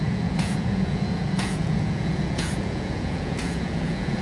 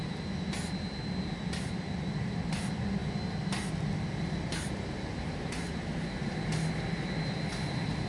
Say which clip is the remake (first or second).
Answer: first